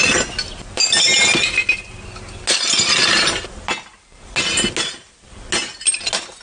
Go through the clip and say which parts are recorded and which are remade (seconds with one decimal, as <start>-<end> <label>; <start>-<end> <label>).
0.0-6.4 recorded